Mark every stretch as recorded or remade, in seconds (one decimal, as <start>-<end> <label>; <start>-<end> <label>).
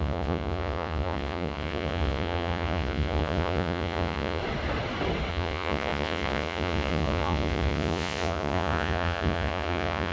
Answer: 0.0-4.4 remade; 4.4-5.3 recorded; 5.3-10.1 remade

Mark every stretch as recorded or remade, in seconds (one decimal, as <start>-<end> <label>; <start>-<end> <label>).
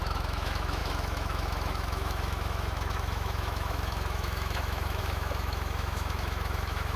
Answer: 0.0-7.0 remade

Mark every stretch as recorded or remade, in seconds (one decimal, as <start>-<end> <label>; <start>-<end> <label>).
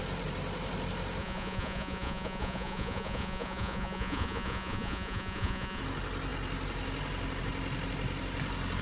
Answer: 0.0-1.2 recorded; 1.2-5.8 remade; 5.8-8.8 recorded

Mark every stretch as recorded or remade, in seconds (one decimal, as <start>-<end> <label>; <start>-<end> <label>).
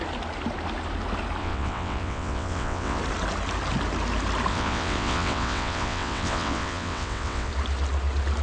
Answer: 0.0-1.4 recorded; 1.4-3.0 remade; 3.0-4.5 recorded; 4.5-7.5 remade; 7.5-8.4 recorded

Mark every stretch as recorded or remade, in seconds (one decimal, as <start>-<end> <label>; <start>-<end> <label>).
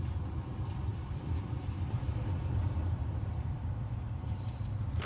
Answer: 0.0-0.9 recorded; 0.9-4.0 remade; 4.0-5.1 recorded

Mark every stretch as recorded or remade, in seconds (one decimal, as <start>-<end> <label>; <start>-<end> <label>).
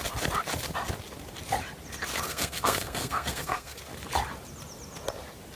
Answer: 0.0-2.3 recorded; 2.3-3.8 remade; 3.8-5.6 recorded